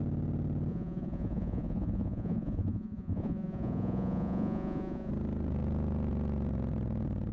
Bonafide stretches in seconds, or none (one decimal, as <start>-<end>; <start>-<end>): 0.0-0.7; 5.1-7.3